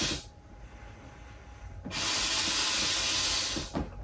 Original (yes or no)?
yes